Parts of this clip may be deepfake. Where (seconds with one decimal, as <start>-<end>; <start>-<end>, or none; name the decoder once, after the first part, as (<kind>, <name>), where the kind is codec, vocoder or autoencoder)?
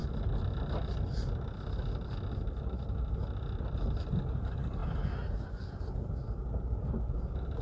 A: none